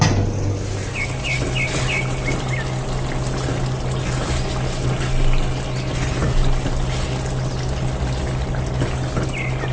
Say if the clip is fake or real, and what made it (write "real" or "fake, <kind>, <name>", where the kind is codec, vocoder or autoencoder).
real